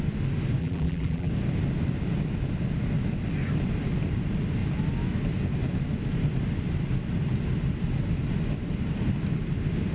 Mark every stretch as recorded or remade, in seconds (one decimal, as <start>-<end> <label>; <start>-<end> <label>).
0.0-0.6 recorded; 0.6-1.3 remade; 1.3-9.9 recorded